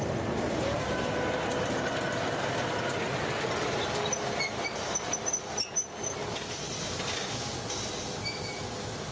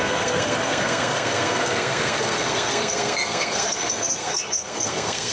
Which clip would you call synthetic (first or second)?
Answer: second